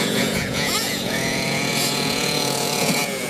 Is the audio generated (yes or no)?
yes